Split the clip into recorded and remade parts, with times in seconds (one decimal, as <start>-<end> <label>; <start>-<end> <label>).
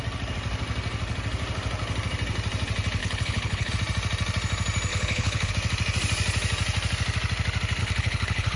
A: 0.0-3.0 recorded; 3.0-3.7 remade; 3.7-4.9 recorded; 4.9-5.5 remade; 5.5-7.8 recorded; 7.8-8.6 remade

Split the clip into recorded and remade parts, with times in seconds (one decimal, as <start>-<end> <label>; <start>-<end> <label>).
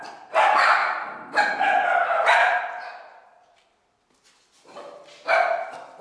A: 0.0-6.0 recorded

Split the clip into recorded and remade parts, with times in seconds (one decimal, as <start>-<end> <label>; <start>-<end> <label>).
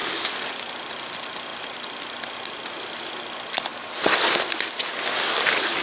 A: 0.0-5.8 recorded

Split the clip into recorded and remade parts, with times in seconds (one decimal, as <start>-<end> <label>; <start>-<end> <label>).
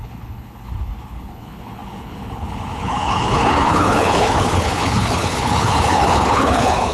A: 0.0-6.9 remade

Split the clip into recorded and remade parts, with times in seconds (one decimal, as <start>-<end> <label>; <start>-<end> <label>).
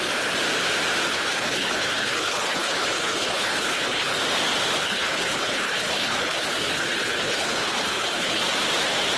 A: 0.0-1.1 recorded; 1.1-4.2 remade; 4.2-4.8 recorded; 4.8-8.4 remade; 8.4-9.2 recorded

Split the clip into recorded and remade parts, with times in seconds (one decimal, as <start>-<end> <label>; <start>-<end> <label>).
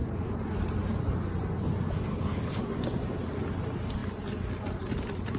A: 0.0-2.1 recorded; 2.1-2.6 remade; 2.6-5.4 recorded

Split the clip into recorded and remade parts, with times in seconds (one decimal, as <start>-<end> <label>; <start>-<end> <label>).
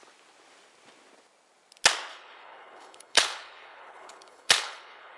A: 0.0-2.1 recorded; 2.1-5.2 remade